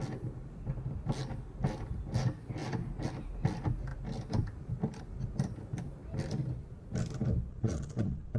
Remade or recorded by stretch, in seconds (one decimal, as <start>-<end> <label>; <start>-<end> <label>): 0.0-7.5 recorded; 7.5-8.4 remade